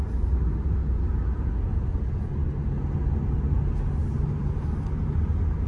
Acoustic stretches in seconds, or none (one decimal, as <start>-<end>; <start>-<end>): 0.0-0.8; 2.3-5.7